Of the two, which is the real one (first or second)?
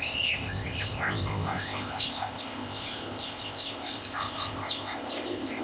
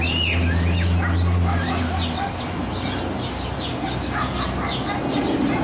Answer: second